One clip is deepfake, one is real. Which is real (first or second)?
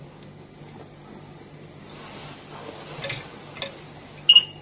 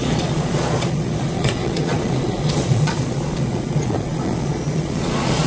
first